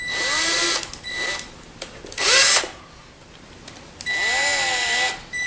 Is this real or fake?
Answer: real